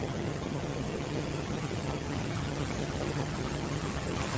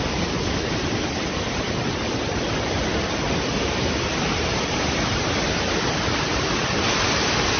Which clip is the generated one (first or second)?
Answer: first